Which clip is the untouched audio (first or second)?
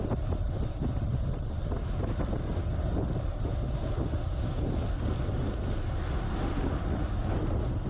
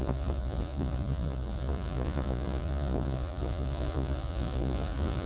first